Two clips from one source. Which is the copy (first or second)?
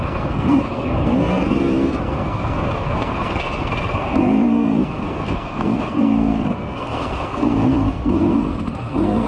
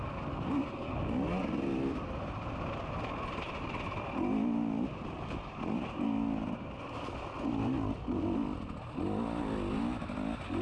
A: first